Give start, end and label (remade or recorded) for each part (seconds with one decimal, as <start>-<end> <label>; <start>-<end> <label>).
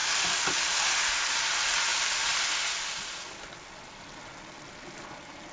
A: 0.0-5.5 recorded